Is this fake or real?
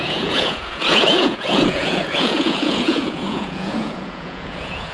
fake